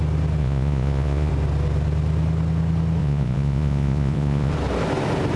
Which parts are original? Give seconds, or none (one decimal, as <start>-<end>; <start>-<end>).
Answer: 0.0-0.4; 1.3-3.0; 4.5-5.4